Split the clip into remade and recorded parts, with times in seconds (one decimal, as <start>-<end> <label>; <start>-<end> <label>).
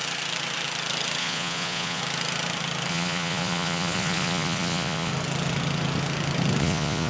0.0-1.2 recorded; 1.2-2.0 remade; 2.0-2.9 recorded; 2.9-5.1 remade; 5.1-6.6 recorded; 6.6-7.1 remade